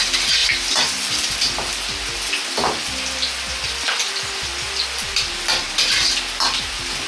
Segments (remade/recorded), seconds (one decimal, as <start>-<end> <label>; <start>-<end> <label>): 0.0-7.1 recorded